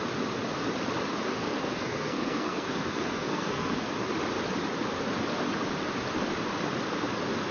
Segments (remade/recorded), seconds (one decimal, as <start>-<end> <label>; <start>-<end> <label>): 0.0-1.3 recorded; 1.3-3.9 remade; 3.9-7.5 recorded